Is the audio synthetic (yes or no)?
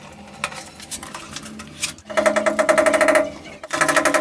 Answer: no